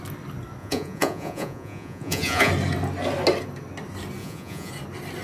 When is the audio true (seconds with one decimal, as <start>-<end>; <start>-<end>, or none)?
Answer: 0.0-0.6; 2.5-4.2; 4.7-5.2